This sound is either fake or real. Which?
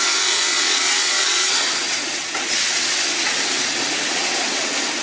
fake